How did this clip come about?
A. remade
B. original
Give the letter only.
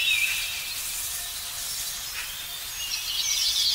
B